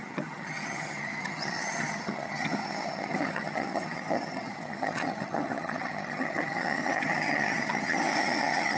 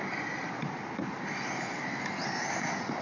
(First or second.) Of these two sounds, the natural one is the second